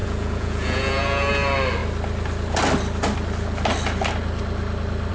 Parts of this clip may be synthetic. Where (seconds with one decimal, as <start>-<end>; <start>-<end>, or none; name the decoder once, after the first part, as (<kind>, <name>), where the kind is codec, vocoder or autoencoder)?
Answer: 0.0-1.3 (vocoder, Vocos)